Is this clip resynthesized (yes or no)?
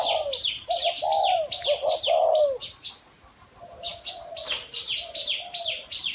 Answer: no